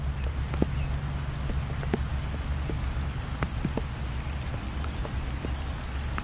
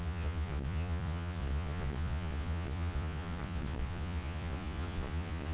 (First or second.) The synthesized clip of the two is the second